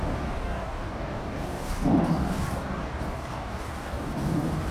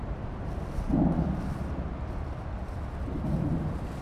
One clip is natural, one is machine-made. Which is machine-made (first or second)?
first